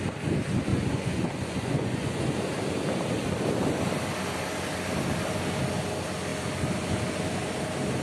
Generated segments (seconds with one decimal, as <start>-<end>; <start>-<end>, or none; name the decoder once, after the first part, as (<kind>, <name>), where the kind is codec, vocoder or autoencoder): 0.7-2.2 (vocoder, Vocos)